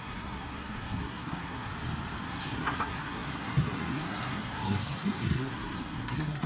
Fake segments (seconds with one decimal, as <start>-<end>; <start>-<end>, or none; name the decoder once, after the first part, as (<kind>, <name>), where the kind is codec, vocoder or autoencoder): 0.0-1.7 (codec, SNAC); 2.2-6.5

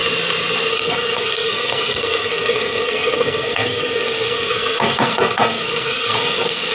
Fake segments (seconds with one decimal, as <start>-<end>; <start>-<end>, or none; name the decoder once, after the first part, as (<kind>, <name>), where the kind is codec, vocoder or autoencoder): 0.7-6.7 (codec, SNAC)

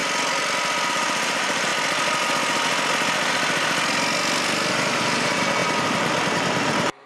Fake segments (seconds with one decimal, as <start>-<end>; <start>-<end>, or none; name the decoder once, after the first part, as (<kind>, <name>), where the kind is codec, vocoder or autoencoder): 0.9-1.7 (vocoder, BigVGAN v2); 4.7-7.1

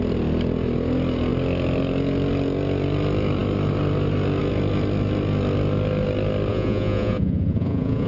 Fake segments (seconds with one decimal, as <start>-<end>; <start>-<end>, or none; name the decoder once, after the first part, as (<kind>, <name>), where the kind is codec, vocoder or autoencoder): 6.5-8.1 (vocoder, Vocos)

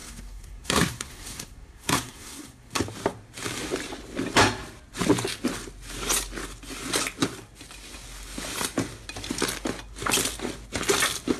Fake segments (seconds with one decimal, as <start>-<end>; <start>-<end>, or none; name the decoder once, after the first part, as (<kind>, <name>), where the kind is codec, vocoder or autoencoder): 0.0-2.8 (codec, SNAC)

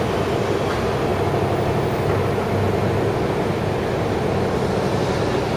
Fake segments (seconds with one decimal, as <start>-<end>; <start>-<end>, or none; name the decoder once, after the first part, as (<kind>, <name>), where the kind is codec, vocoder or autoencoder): none

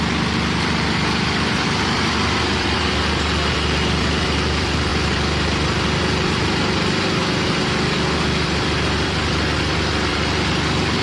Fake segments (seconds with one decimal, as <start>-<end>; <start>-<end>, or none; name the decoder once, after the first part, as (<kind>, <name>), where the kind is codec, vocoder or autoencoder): 0.0-11.0 (vocoder, BigVGAN v2)